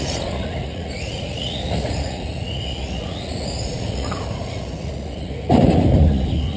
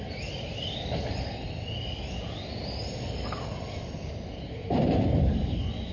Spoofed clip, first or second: first